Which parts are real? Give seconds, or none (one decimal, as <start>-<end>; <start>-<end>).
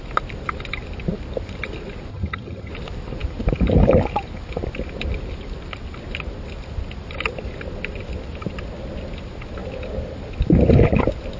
0.0-2.1; 2.7-11.4